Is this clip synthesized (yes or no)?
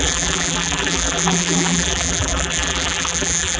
yes